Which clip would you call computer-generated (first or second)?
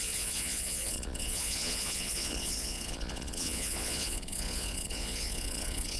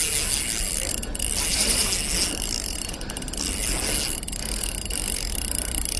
first